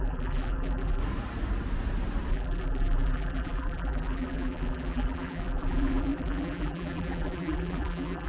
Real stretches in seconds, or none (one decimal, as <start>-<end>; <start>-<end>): 1.0-2.3